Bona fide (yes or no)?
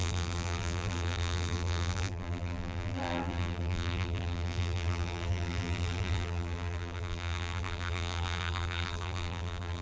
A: no